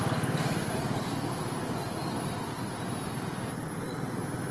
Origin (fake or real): real